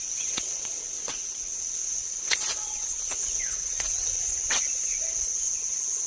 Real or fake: fake